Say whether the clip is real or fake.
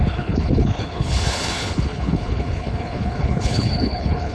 fake